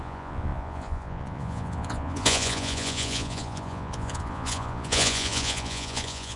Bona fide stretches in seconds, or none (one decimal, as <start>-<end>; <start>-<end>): none